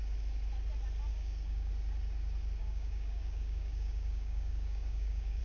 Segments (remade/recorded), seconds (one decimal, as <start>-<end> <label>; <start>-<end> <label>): 0.0-1.1 recorded; 1.1-1.7 remade; 1.7-2.6 recorded; 2.6-5.4 remade